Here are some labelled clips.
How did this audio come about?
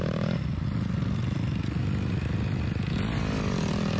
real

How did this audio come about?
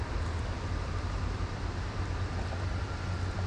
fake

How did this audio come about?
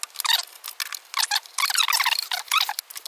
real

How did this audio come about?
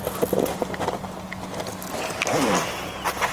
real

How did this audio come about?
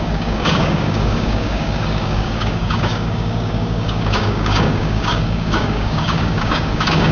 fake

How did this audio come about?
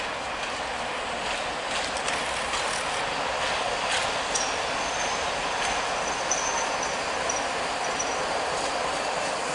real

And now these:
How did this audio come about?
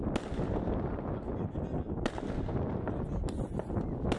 real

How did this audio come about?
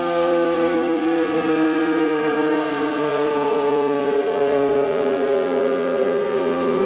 fake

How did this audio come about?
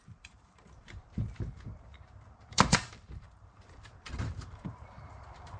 fake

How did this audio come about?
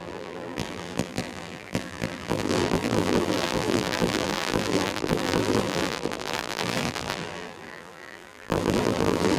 fake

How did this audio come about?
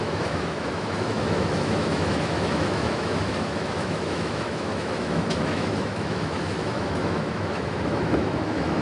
fake